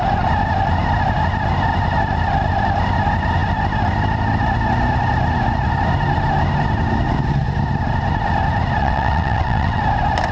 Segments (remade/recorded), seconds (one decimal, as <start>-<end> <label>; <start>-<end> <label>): 0.0-8.8 recorded; 8.8-9.8 remade; 9.8-10.3 recorded